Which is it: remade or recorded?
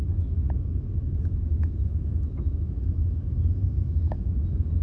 remade